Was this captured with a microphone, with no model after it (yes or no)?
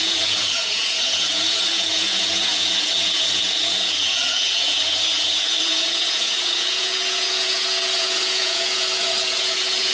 no